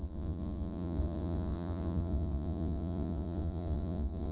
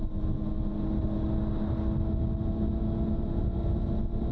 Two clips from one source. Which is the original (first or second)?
second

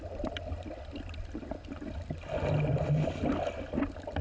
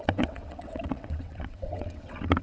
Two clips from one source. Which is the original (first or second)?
first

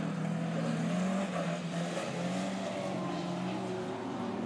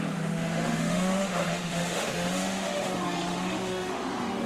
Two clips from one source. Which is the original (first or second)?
first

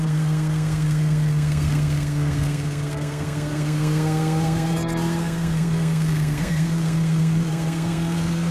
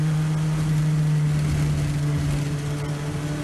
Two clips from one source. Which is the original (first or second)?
second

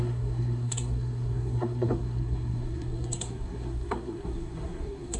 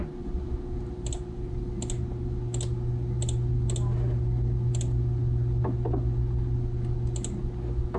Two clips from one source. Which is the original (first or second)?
second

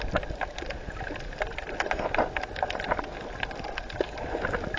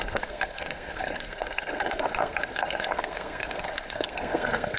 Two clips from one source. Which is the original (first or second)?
first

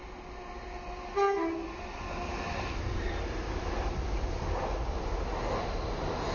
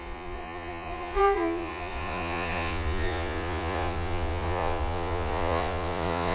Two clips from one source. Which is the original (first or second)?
first